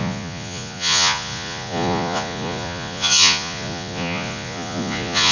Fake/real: fake